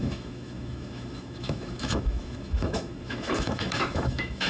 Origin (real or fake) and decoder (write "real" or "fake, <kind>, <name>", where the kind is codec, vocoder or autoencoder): fake, autoencoder, DAC-VAE